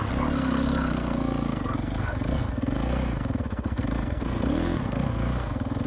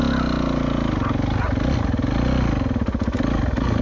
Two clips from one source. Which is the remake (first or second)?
first